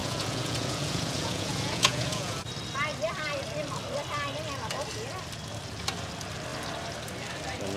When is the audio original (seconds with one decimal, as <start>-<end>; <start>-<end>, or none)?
2.4-7.8